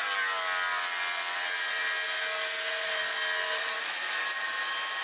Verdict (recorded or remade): recorded